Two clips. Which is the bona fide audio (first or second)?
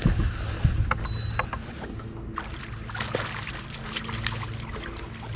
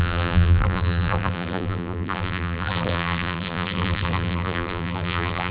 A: first